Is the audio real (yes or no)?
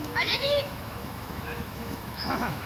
no